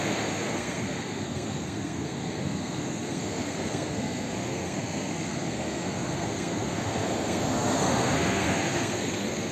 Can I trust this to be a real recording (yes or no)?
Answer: no